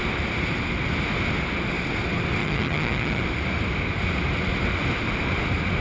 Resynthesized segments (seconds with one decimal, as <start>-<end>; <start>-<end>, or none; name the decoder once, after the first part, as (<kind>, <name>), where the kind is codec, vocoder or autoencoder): 2.4-3.2 (vocoder, HiFi-GAN)